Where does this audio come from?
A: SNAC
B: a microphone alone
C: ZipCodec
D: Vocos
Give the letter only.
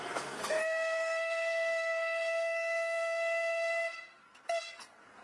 A